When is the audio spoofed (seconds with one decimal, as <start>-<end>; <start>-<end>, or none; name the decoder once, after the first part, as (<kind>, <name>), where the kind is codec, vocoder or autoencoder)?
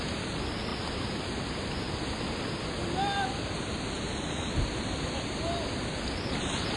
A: none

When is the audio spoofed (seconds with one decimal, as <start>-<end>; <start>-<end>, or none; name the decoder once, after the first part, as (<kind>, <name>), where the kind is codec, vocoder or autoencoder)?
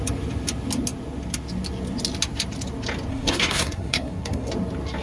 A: 3.1-4.5 (codec, SNAC)